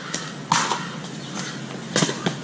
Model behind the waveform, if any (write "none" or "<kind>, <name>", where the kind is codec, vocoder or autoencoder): none